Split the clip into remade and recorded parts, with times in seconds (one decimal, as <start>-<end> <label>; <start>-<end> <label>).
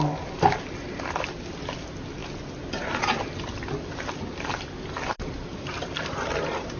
0.0-6.8 recorded